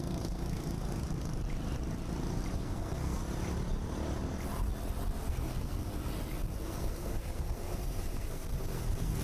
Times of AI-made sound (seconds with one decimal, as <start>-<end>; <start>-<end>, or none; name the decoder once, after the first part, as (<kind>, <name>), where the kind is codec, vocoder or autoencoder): 0.0-1.3 (codec, SNAC); 2.6-3.2; 5.3-5.9; 6.6-9.2